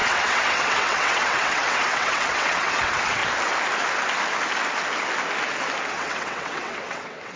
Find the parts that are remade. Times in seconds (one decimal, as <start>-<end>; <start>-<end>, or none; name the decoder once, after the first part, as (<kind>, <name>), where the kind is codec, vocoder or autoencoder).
0.0-3.2 (vocoder, WaveNeXt); 5.9-7.4